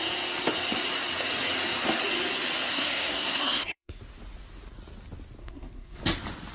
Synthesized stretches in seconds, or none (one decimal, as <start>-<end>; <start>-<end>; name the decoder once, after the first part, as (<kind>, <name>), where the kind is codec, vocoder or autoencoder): 2.7-4.0 (codec, SNAC); 5.4-6.0